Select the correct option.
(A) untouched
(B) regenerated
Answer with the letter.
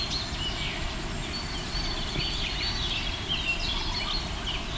A